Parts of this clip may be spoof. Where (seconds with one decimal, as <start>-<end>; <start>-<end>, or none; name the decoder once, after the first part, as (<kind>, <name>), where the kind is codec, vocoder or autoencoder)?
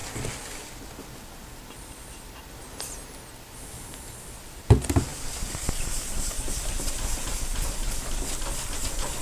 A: none